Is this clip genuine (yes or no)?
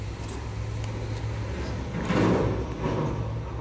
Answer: yes